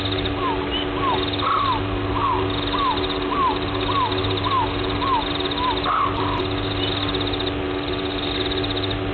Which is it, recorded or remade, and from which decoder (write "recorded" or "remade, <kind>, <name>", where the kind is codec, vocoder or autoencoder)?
recorded